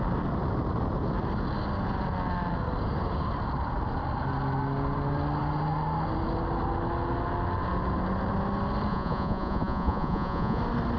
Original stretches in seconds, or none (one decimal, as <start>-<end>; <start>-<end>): 0.0-8.9; 10.6-11.0